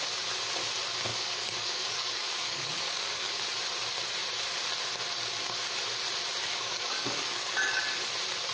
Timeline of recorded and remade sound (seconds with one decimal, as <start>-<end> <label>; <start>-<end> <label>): 0.0-1.1 recorded; 1.1-3.4 remade; 3.4-6.4 recorded; 6.4-7.8 remade; 7.8-8.5 recorded